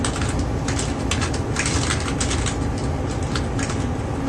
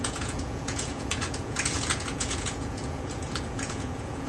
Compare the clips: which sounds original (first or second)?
first